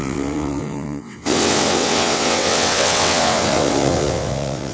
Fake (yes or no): yes